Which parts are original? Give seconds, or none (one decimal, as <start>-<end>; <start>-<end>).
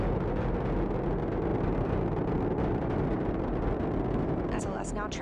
0.0-1.5; 4.6-5.2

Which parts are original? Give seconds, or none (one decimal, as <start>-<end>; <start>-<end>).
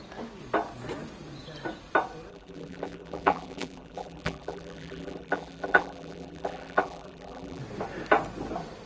0.0-2.3; 7.6-8.9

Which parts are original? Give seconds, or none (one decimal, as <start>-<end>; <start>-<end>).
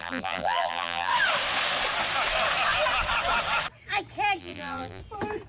1.1-4.4; 5.0-5.5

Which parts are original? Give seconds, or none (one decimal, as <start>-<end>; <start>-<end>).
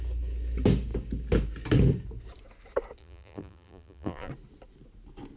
0.0-3.0; 4.3-5.4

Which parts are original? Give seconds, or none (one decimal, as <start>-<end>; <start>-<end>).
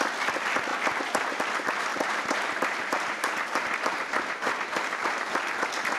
0.0-0.7; 1.4-1.9; 5.5-6.0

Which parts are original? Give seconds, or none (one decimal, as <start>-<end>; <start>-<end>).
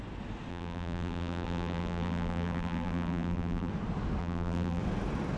0.0-0.5; 3.7-4.2; 4.8-5.4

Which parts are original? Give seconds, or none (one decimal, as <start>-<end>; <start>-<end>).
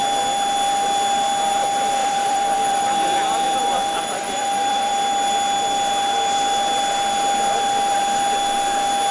0.0-2.0; 4.9-9.1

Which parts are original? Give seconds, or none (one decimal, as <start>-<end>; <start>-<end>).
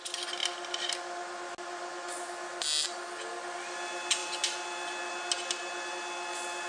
0.0-6.7